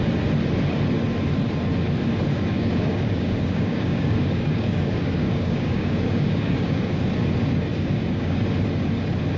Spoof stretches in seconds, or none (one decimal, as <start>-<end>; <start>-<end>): 2.3-7.0; 7.7-8.4